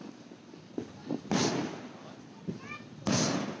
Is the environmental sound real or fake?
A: real